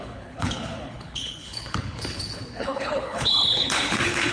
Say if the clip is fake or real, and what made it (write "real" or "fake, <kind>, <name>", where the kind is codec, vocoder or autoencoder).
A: fake, codec, HILCodec